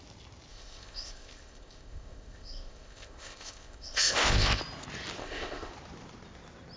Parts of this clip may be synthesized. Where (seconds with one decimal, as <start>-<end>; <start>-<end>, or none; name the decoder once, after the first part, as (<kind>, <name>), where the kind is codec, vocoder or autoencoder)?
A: 0.5-4.6 (codec, ZipCodec); 5.2-5.7